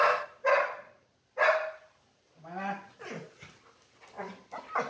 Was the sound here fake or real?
real